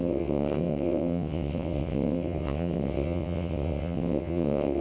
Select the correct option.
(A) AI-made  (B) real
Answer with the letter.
A